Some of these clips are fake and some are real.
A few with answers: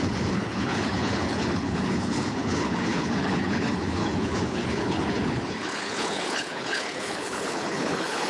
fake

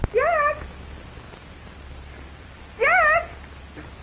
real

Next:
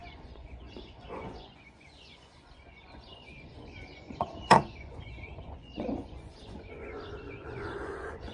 fake